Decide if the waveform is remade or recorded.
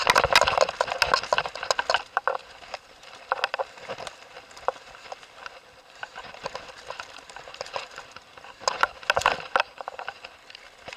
recorded